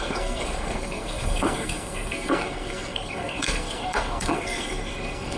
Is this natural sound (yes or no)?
no